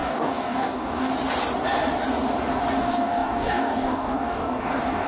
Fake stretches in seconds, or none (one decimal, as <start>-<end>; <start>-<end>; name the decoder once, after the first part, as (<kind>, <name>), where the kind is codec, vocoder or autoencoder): 0.0-1.1 (codec, DAC); 2.8-5.1